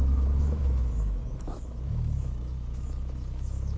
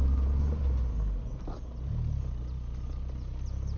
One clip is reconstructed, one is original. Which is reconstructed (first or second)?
first